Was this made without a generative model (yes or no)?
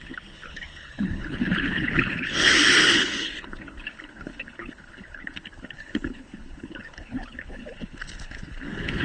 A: no